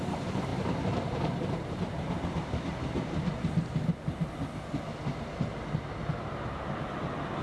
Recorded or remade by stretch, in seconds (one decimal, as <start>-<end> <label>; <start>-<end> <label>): 0.0-0.5 recorded; 0.5-2.2 remade; 2.2-7.4 recorded

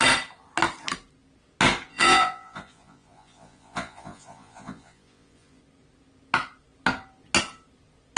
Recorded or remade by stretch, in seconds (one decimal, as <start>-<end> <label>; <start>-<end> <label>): 0.0-1.9 recorded; 1.9-5.6 remade; 5.6-8.2 recorded

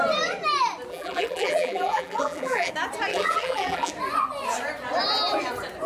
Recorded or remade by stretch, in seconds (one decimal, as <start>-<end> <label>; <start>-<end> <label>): 0.0-0.9 recorded; 0.9-2.7 remade; 2.7-3.1 recorded; 3.1-3.9 remade; 3.9-5.9 recorded

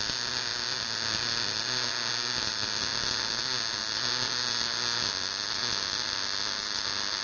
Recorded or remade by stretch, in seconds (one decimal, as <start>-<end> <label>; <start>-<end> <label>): 0.0-7.2 recorded

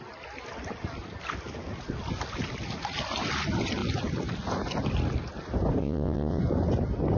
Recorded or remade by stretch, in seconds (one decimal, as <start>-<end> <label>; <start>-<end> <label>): 0.0-5.8 recorded; 5.8-6.4 remade; 6.4-7.2 recorded

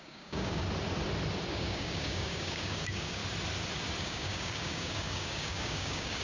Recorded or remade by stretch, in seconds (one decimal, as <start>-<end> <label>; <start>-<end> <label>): 0.0-0.6 remade; 0.6-1.5 recorded; 1.5-3.2 remade; 3.2-4.0 recorded; 4.0-6.2 remade